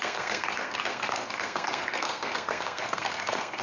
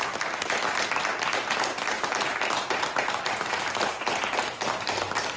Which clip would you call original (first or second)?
second